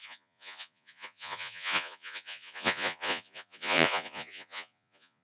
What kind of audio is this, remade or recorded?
remade